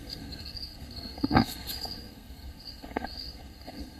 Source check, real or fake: fake